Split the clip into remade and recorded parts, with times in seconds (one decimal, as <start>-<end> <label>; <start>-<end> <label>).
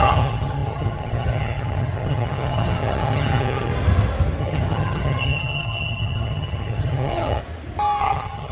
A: 0.0-3.7 remade; 3.7-4.4 recorded; 4.4-7.4 remade; 7.4-8.0 recorded; 8.0-8.5 remade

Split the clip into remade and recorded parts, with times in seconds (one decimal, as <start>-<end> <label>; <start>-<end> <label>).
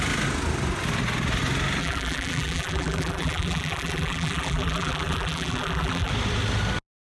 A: 0.0-1.8 recorded; 1.8-6.1 remade; 6.1-7.1 recorded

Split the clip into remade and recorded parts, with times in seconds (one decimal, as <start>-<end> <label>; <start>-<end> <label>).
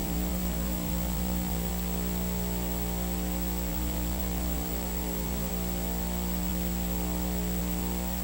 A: 0.0-1.7 remade; 1.7-3.7 recorded; 3.7-5.5 remade; 5.5-8.2 recorded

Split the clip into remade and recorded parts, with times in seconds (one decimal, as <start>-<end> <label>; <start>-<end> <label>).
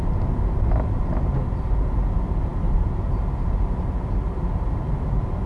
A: 0.0-5.5 recorded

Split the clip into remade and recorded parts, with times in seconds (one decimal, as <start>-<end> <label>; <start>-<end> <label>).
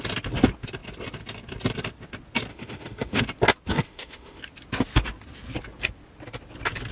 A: 0.0-2.5 recorded; 2.5-3.2 remade; 3.2-3.7 recorded; 3.7-4.4 remade; 4.4-6.9 recorded